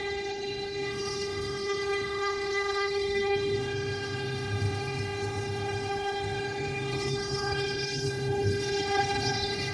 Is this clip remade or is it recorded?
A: remade